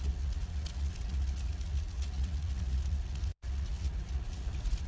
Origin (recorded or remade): remade